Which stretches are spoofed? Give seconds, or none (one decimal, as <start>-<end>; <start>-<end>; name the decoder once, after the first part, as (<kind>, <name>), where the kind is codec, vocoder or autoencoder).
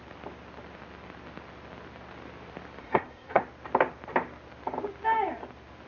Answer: 2.8-3.4 (codec, SNAC)